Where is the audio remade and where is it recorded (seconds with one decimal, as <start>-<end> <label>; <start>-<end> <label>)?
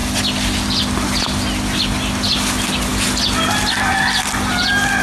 0.0-5.0 recorded